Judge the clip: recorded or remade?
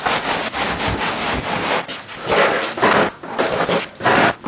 recorded